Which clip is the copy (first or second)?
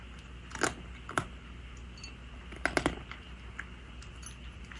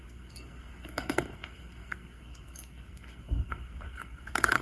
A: second